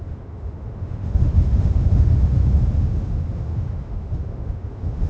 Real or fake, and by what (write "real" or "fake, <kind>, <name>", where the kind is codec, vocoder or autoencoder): fake, autoencoder, DAC-VAE